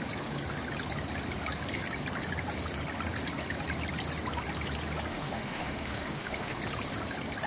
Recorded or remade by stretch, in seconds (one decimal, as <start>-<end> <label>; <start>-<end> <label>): 0.0-5.1 recorded; 5.1-6.6 remade; 6.6-7.5 recorded